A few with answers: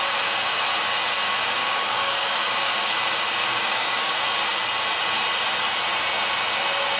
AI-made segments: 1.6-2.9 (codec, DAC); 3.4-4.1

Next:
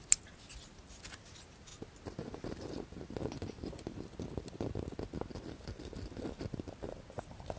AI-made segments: none

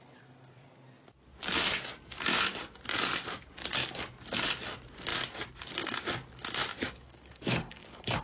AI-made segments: 6.7-8.2 (codec, DAC)

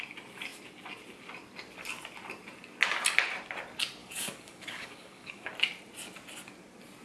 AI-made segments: 4.0-5.5 (codec, DAC)

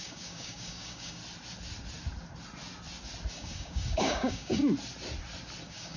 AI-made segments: 0.0-1.2 (codec, DAC); 3.3-4.6; 5.6-6.0